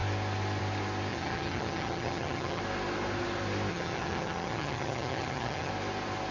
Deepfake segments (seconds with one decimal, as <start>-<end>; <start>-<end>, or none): 1.1-2.6; 3.7-5.7